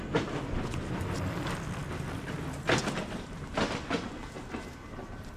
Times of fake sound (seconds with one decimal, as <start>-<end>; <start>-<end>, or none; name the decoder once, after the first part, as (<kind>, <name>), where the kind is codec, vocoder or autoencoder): none